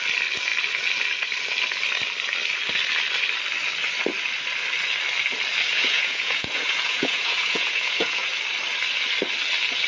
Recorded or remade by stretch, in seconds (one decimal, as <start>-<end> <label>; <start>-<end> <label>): 0.0-5.7 recorded; 5.7-8.3 remade; 8.3-9.9 recorded